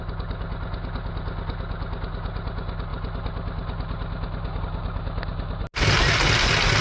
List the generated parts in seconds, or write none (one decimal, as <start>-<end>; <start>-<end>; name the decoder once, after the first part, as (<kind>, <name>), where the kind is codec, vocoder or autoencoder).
none

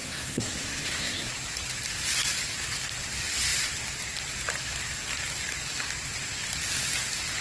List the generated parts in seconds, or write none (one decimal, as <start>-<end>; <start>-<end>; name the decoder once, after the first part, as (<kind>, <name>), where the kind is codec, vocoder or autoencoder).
0.0-1.3 (codec, SNAC)

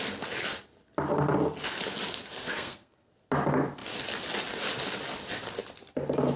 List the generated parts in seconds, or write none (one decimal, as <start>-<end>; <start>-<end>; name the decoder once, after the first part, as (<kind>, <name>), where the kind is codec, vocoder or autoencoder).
2.5-3.1 (codec, SNAC)

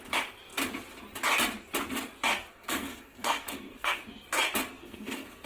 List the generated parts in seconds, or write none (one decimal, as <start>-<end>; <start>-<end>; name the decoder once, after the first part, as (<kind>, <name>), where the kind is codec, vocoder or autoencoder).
2.5-4.0 (codec, SNAC); 4.8-5.5

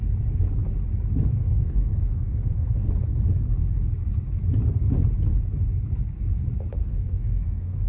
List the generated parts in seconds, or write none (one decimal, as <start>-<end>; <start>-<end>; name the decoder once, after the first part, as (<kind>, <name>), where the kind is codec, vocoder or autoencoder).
1.3-2.9 (codec, SNAC); 6.8-7.9

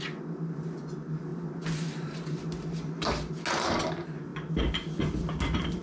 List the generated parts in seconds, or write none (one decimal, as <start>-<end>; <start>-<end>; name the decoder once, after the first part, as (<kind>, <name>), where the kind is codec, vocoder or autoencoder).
none